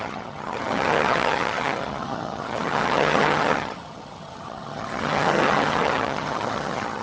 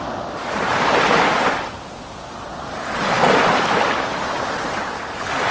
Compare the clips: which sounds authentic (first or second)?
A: second